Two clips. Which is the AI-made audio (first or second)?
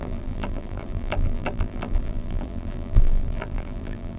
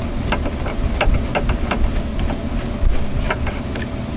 first